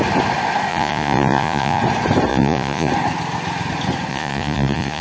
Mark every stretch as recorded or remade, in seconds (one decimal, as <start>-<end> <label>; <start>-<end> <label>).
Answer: 0.0-0.7 recorded; 0.7-1.8 remade; 1.8-2.3 recorded; 2.3-2.9 remade; 2.9-4.1 recorded; 4.1-5.0 remade